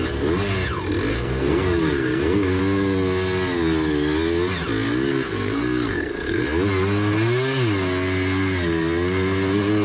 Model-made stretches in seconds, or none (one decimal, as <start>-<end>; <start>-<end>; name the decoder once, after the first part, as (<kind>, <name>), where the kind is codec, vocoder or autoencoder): 1.1-2.6 (codec, SNAC); 5.1-6.4